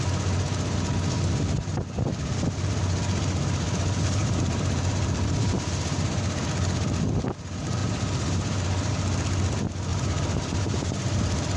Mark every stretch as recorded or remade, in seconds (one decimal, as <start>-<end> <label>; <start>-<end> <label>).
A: 0.0-4.2 recorded; 4.2-6.2 remade; 6.2-7.8 recorded; 7.8-8.9 remade; 8.9-9.9 recorded; 9.9-11.2 remade; 11.2-11.6 recorded